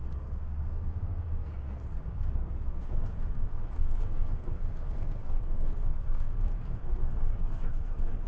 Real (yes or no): no